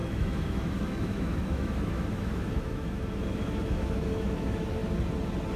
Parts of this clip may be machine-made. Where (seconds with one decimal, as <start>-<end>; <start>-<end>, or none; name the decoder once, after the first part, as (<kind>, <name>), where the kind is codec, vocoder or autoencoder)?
0.0-4.8 (autoencoder, DAC-VAE)